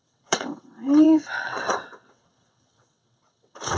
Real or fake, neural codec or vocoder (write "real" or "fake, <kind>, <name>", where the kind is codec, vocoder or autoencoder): fake, vocoder, WaveNeXt